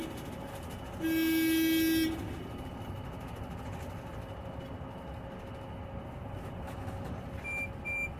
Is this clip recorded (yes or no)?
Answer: yes